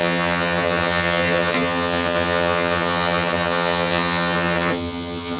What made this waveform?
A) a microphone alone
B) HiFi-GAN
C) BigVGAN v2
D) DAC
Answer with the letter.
B